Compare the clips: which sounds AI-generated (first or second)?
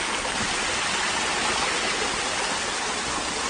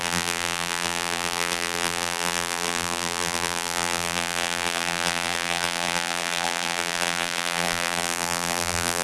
second